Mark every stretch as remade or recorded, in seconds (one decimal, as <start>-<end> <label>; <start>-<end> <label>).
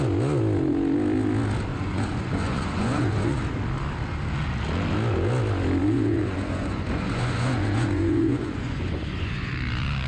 0.0-1.7 recorded; 1.7-3.4 remade; 3.4-5.8 recorded; 5.8-9.5 remade; 9.5-10.1 recorded